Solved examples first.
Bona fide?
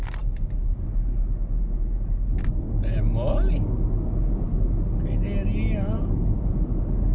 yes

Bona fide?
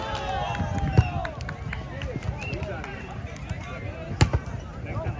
yes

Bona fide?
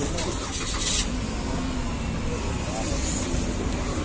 yes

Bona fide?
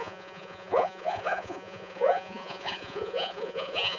no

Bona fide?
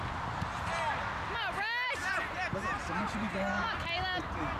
yes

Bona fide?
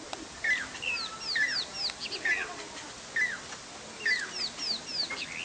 yes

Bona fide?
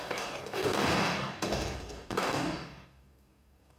no